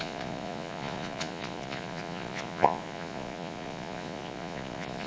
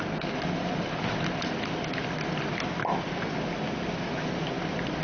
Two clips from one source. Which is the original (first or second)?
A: second